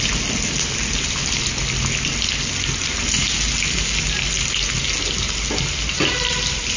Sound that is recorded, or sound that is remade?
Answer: recorded